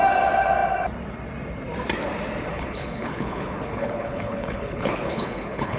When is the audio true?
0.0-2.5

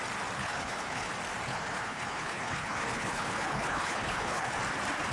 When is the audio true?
0.0-0.4; 1.1-1.5; 4.6-5.1

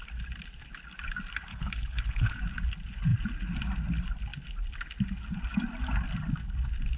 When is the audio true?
0.0-1.5; 2.4-7.0

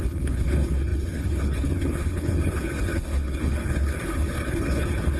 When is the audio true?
none

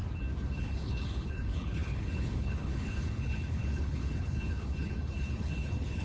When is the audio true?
0.0-0.5

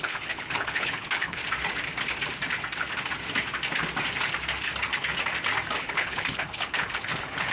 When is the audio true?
1.4-5.8

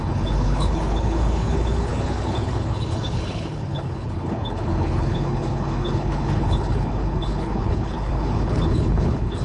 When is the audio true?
none

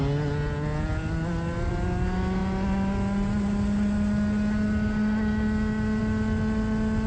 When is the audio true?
0.0-7.1